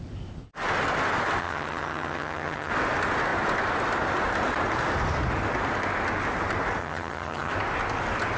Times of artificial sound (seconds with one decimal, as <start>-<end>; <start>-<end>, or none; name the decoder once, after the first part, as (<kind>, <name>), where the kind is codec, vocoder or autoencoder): 1.4-2.7 (vocoder, HiFi-GAN); 6.8-7.5